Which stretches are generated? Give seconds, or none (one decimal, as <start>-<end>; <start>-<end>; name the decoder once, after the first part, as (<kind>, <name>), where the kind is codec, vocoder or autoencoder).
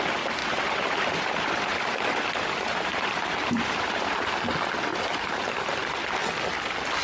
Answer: 0.4-4.3 (vocoder, BigVGAN v2); 4.9-5.7